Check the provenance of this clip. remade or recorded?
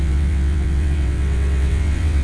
remade